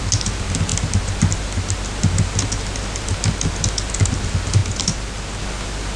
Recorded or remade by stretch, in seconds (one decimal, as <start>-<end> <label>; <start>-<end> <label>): 0.0-6.0 recorded

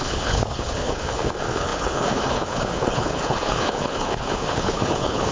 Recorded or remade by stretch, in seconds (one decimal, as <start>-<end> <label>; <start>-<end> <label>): 0.0-5.3 remade

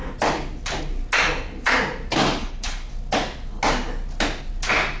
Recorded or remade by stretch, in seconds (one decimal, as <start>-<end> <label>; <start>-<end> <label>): 0.0-2.4 recorded; 2.4-2.9 remade; 2.9-5.0 recorded

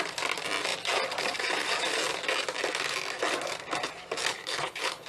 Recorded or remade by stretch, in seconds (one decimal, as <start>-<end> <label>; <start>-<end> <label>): 0.0-4.3 recorded; 4.3-5.1 remade

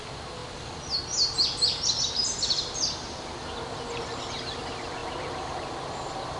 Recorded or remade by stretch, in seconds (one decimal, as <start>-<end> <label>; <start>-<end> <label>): 0.0-6.4 recorded